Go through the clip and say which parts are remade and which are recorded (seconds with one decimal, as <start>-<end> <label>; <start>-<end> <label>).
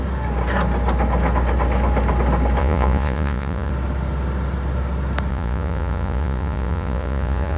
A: 0.0-2.6 recorded; 2.6-3.7 remade; 3.7-5.3 recorded; 5.3-7.6 remade